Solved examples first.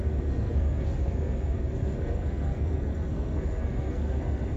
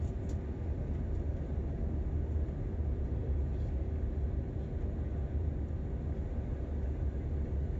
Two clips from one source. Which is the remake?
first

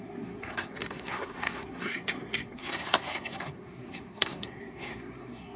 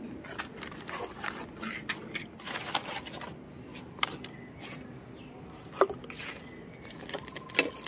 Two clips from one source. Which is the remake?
first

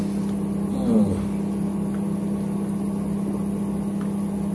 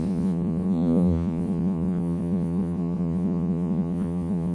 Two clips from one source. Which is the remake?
second